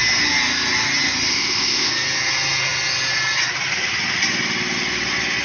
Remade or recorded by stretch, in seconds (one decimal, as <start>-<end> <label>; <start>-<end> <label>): 0.0-1.3 recorded; 1.3-1.9 remade; 1.9-5.4 recorded